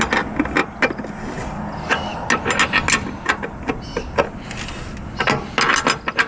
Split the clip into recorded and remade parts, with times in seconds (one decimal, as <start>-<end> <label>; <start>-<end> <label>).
0.0-6.3 recorded